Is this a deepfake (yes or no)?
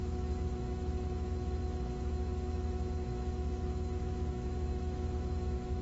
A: yes